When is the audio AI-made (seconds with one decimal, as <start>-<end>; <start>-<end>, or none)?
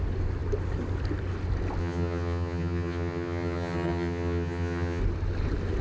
1.8-5.0